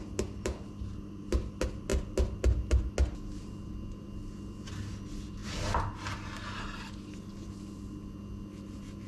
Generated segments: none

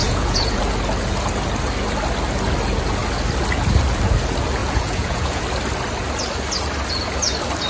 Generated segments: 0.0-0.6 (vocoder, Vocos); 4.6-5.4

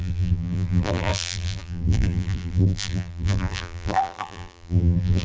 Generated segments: 0.0-5.2 (vocoder, BigVGAN v2)